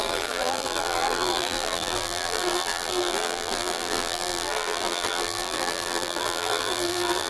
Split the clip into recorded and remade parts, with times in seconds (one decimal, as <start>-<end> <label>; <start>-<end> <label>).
0.0-7.3 remade

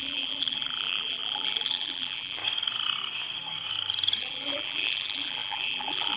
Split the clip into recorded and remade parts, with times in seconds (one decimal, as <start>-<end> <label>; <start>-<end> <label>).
0.0-2.4 remade; 2.4-4.2 recorded; 4.2-6.2 remade

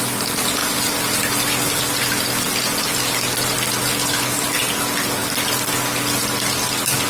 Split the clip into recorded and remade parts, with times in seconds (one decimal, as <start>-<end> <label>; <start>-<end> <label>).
0.0-7.1 recorded

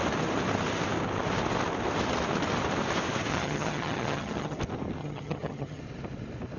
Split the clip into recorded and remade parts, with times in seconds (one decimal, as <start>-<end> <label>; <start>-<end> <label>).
0.0-3.3 recorded; 3.3-4.6 remade; 4.6-5.0 recorded; 5.0-5.8 remade; 5.8-6.6 recorded

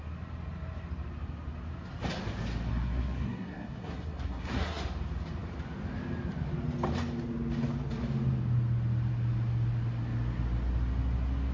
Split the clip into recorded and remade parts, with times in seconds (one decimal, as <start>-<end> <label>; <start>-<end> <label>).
0.0-2.7 recorded; 2.7-4.8 remade; 4.8-11.5 recorded